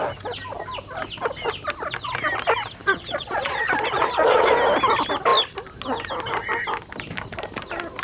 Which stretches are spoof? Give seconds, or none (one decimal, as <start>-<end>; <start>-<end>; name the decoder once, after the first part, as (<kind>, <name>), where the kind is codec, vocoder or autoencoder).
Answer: 2.8-4.5 (vocoder, Vocos)